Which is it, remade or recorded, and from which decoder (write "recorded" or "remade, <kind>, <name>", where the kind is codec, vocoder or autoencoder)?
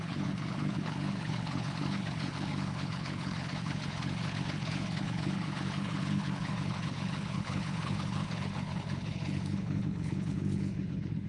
remade, codec, HILCodec